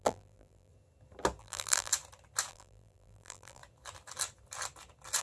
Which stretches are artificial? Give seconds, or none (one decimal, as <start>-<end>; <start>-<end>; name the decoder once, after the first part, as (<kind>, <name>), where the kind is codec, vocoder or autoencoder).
0.0-0.7 (vocoder, BigVGAN v2); 1.4-1.9; 2.5-3.6